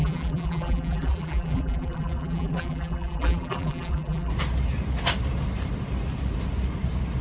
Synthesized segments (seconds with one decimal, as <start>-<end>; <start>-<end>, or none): 0.0-4.3